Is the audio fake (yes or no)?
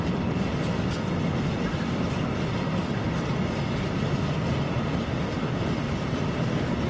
no